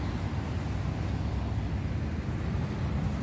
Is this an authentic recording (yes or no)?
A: yes